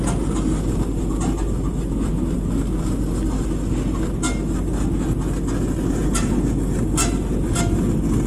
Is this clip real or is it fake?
real